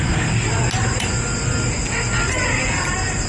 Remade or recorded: recorded